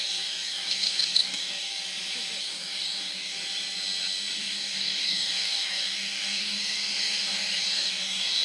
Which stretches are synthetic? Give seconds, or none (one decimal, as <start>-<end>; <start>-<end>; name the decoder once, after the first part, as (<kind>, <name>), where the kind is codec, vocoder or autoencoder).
0.0-1.8 (codec, DAC); 2.4-3.4; 4.4-8.4